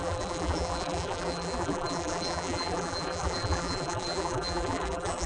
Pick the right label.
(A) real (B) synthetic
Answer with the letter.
B